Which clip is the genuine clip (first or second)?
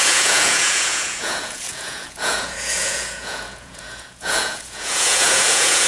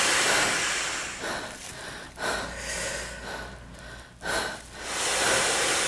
second